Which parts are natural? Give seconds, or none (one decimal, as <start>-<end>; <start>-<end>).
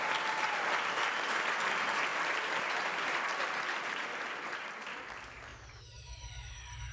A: 0.0-2.1; 3.2-5.5; 6.5-6.9